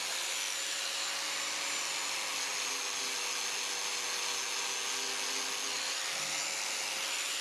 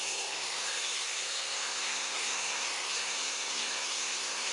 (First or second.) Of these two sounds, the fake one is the second